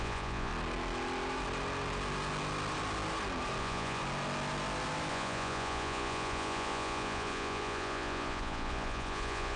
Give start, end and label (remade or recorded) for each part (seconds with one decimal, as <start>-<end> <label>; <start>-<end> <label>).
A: 0.0-0.5 remade; 0.5-3.6 recorded; 3.6-4.0 remade; 4.0-5.1 recorded; 5.1-9.6 remade

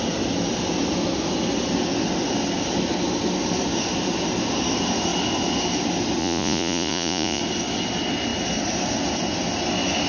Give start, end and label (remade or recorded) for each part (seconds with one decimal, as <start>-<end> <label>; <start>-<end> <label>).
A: 0.0-6.2 recorded; 6.2-7.4 remade; 7.4-10.1 recorded

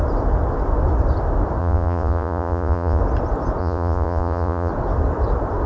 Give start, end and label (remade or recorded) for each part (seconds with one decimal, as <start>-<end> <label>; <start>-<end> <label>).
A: 0.0-1.6 recorded; 1.6-3.0 remade; 3.0-3.6 recorded; 3.6-4.7 remade; 4.7-5.7 recorded